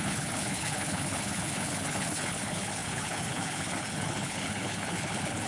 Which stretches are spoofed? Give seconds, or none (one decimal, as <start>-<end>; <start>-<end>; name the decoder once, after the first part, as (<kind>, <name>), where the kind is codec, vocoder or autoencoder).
0.0-5.5 (codec, HILCodec)

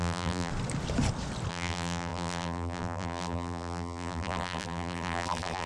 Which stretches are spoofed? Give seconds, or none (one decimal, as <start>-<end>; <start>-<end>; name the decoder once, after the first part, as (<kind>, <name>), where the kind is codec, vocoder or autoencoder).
0.0-0.5 (vocoder, BigVGAN v2); 1.5-5.7

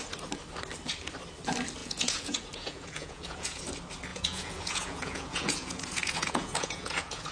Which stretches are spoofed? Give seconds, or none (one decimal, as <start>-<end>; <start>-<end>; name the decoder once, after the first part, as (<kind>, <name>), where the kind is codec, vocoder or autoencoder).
1.8-3.6 (vocoder, Vocos); 4.1-7.3

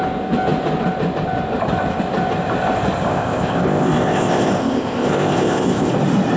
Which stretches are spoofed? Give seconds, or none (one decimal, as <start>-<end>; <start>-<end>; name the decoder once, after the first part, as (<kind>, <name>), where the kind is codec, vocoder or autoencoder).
3.1-5.9 (codec, ZipCodec)

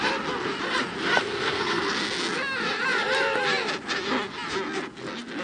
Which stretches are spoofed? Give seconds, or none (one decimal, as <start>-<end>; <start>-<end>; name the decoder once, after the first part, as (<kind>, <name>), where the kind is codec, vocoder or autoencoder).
1.2-1.8 (codec, SNAC)

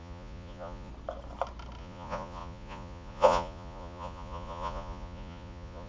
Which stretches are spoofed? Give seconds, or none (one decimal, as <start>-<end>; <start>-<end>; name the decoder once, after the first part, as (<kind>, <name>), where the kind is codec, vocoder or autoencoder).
0.0-0.9 (vocoder, Vocos); 1.8-5.9

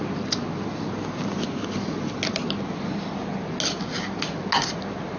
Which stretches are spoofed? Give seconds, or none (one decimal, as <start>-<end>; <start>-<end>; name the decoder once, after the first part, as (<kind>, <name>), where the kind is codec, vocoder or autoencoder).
none